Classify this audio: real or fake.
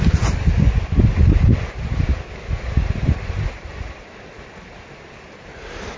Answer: real